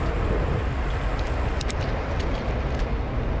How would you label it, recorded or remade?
recorded